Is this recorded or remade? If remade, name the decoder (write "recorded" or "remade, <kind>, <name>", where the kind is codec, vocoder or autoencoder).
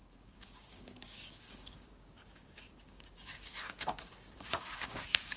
remade, codec, DAC